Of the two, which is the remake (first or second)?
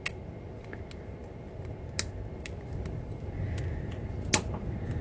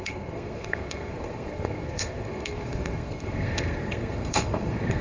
second